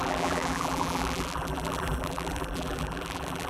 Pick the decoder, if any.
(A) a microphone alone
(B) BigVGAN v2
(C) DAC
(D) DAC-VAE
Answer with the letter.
B